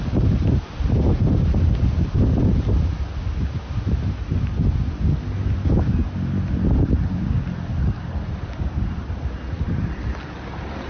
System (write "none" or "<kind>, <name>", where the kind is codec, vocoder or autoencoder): none